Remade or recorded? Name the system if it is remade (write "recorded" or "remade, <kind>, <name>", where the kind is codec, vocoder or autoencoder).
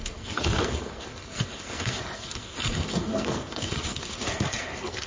remade, codec, SNAC